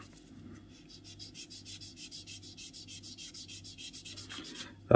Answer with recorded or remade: recorded